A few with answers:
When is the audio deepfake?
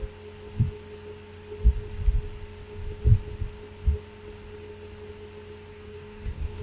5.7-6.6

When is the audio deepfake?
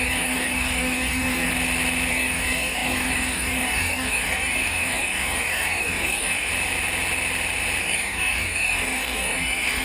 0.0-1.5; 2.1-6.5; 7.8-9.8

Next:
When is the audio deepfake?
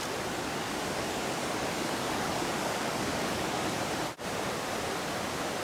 0.4-3.8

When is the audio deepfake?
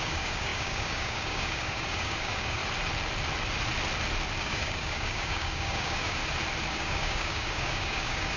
0.0-2.6; 4.4-6.2; 6.7-8.4